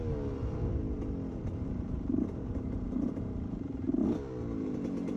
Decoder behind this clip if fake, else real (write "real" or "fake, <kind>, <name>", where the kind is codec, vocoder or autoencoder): real